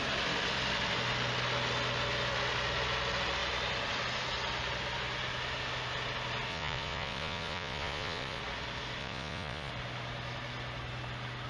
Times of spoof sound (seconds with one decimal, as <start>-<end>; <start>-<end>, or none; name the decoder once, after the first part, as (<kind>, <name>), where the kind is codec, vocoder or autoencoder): 6.5-8.4 (vocoder, Vocos); 9.0-9.7